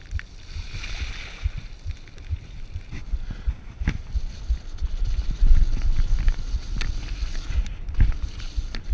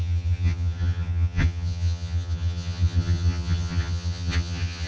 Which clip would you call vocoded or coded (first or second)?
second